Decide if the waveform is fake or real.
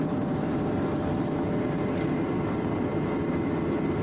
fake